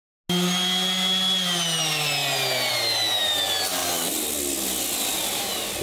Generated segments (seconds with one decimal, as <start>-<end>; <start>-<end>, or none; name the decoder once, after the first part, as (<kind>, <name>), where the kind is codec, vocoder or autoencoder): none

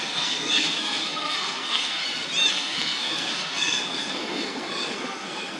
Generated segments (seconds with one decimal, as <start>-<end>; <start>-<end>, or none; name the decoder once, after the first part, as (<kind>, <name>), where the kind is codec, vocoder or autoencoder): 0.0-2.0 (codec, SNAC); 2.5-5.6

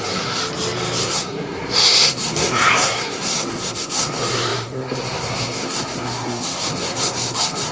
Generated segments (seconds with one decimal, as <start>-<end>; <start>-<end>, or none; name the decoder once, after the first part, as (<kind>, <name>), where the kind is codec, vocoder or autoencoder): 0.0-0.4 (codec, SNAC); 1.0-7.7

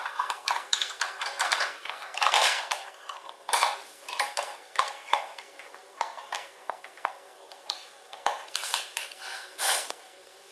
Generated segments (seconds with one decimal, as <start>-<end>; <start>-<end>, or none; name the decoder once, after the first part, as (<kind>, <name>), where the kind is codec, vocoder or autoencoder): 0.0-10.5 (codec, SNAC)

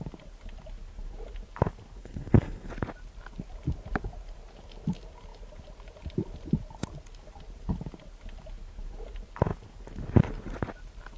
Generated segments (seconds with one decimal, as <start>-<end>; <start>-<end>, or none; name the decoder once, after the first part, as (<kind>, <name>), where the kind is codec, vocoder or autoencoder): 2.0-2.7 (codec, SNAC)

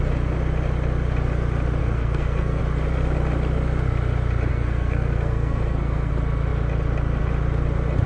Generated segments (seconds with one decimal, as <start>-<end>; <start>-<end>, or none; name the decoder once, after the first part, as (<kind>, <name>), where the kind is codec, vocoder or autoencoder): 1.8-2.6 (codec, SNAC); 4.5-6.1

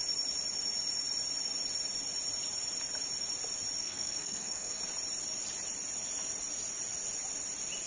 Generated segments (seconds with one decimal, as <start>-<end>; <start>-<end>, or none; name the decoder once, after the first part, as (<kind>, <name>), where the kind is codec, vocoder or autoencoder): 3.8-4.8 (codec, SNAC)